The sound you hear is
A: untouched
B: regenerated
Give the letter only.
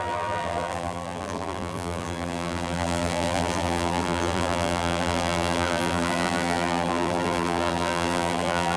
B